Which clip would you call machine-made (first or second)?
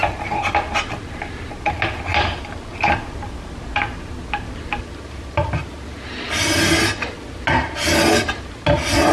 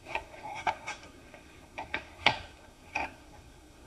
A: second